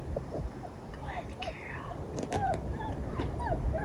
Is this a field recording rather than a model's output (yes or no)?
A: no